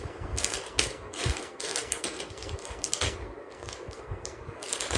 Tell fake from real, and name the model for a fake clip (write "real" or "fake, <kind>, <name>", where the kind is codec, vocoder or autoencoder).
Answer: fake, codec, SNAC